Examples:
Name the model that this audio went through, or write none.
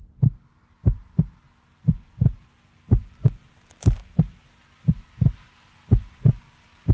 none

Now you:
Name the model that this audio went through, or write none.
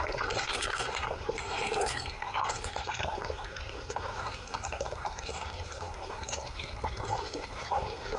codec, SNAC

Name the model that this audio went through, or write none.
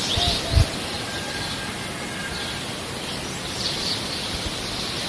none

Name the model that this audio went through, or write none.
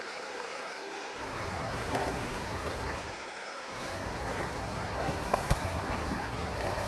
codec, SNAC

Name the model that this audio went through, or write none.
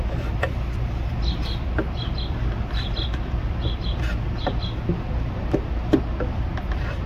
none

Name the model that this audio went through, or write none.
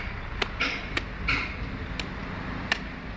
none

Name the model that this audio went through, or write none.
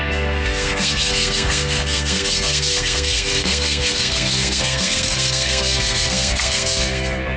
codec, SNAC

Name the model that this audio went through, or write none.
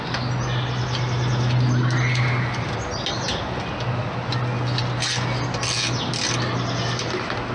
none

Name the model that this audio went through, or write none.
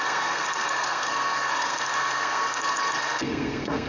codec, SNAC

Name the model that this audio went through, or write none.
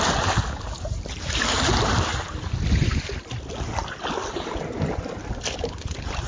none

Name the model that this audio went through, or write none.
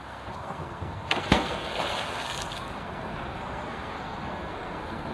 codec, SNAC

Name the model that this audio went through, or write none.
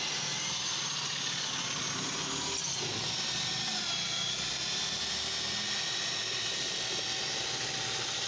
none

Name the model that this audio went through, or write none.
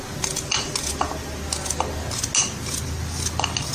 none